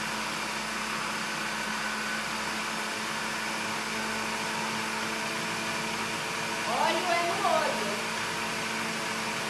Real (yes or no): yes